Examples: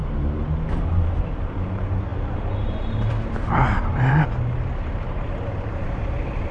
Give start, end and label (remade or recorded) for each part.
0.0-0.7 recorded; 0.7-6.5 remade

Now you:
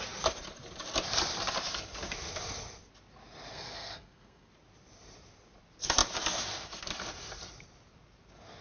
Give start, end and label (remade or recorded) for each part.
0.0-3.5 recorded; 3.5-4.5 remade; 4.5-8.6 recorded

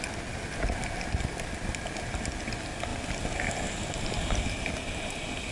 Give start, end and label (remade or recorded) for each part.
0.0-5.5 recorded

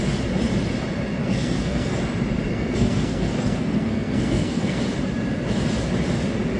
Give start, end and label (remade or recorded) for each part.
0.0-1.2 recorded; 1.2-2.0 remade; 2.0-2.5 recorded; 2.5-4.8 remade; 4.8-6.6 recorded